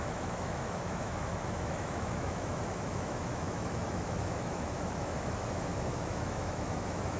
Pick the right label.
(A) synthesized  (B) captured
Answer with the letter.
A